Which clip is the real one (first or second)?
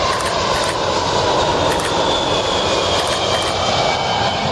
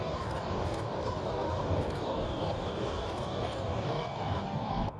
first